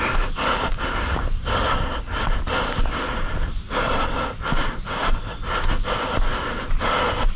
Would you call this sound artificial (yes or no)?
no